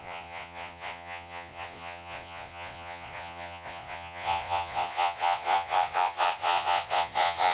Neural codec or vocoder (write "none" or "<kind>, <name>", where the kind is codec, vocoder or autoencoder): vocoder, Vocos